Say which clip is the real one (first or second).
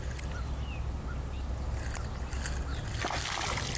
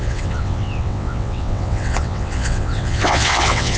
first